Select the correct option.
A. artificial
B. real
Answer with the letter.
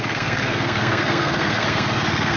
A